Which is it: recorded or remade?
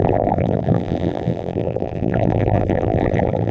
remade